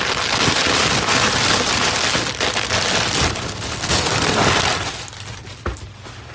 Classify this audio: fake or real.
real